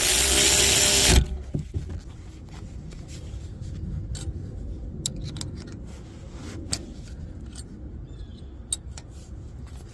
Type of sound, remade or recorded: recorded